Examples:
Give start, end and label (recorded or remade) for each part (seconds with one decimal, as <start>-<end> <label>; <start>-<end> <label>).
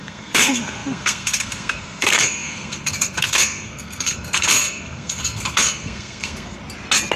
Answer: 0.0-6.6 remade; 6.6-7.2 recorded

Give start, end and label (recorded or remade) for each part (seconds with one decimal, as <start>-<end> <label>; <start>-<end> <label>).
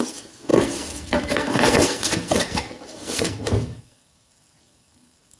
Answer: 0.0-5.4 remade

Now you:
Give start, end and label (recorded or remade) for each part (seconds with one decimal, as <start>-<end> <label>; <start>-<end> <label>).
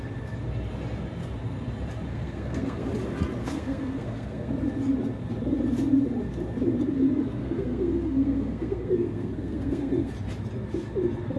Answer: 0.0-2.1 recorded; 2.1-2.9 remade; 2.9-3.4 recorded; 3.4-4.5 remade; 4.5-7.4 recorded; 7.4-10.1 remade; 10.1-11.4 recorded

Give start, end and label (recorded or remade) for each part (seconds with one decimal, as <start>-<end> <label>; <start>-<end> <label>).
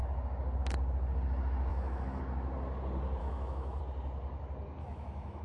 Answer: 0.0-1.7 recorded; 1.7-2.2 remade; 2.2-3.2 recorded; 3.2-3.8 remade; 3.8-4.8 recorded; 4.8-5.4 remade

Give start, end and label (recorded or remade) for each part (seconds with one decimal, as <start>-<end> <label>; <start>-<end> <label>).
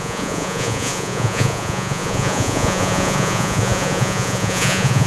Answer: 0.0-5.1 remade